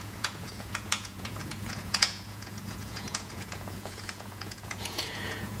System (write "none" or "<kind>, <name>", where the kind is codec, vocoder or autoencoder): vocoder, Vocos